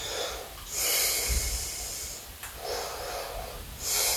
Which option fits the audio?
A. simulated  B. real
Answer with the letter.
A